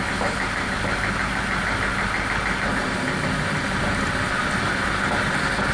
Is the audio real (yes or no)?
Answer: yes